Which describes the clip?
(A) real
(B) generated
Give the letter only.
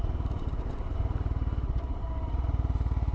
B